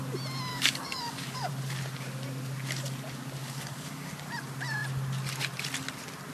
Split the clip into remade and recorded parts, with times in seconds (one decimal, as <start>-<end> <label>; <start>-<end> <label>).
0.0-0.5 recorded; 0.5-1.5 remade; 1.5-3.4 recorded; 3.4-4.1 remade; 4.1-6.3 recorded